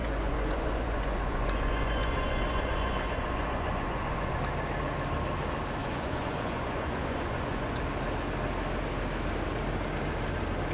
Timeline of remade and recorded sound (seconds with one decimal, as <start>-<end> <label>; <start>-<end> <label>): 0.0-4.4 remade; 4.4-5.8 recorded; 5.8-7.8 remade; 7.8-10.7 recorded